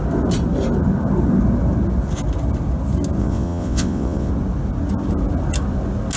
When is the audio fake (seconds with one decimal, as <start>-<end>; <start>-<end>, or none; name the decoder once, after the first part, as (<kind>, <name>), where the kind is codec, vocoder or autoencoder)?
3.2-4.3 (vocoder, WaveNeXt)